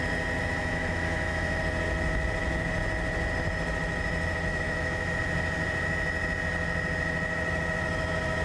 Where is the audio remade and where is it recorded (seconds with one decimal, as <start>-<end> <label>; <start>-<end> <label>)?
0.0-0.6 recorded; 0.6-1.6 remade; 1.6-4.5 recorded; 4.5-5.2 remade; 5.2-8.4 recorded